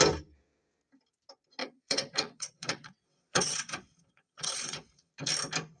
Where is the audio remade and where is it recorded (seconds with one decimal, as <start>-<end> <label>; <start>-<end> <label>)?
0.0-1.6 recorded; 1.6-5.1 remade; 5.1-5.8 recorded